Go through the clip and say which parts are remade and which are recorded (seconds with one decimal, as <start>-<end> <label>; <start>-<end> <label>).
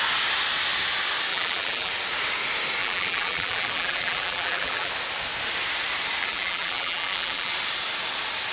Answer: 0.0-1.3 recorded; 1.3-1.9 remade; 1.9-2.8 recorded; 2.8-4.9 remade; 4.9-6.2 recorded; 6.2-7.5 remade; 7.5-8.5 recorded